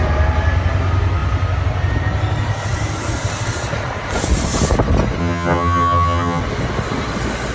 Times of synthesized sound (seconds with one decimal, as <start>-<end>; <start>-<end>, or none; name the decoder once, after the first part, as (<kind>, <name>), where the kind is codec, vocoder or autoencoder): 5.2-6.4 (vocoder, HiFi-GAN)